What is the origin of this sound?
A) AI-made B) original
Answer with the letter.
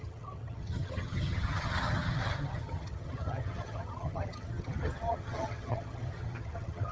A